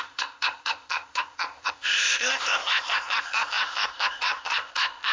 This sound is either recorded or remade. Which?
remade